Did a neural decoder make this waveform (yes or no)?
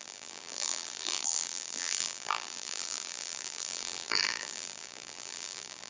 yes